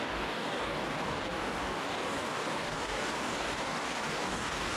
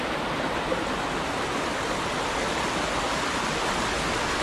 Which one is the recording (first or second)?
second